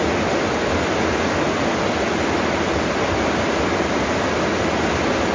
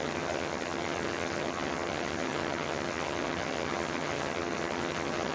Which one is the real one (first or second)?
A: first